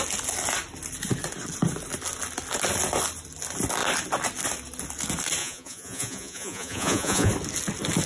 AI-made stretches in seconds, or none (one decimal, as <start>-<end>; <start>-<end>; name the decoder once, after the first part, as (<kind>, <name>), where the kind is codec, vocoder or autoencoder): 5.4-7.3 (vocoder, Vocos)